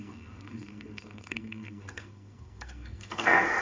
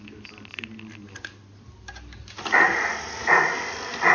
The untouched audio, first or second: second